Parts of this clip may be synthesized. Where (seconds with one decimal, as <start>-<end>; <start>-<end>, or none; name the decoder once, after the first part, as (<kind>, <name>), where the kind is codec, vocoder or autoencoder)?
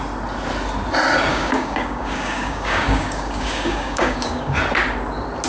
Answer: 1.3-4.6 (codec, DAC)